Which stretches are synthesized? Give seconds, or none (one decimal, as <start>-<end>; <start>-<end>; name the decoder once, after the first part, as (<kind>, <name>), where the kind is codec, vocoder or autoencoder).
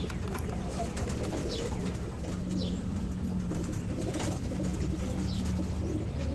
none